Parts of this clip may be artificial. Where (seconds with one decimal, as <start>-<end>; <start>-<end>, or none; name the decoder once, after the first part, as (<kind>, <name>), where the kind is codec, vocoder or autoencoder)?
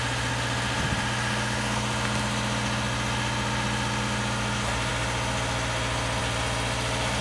none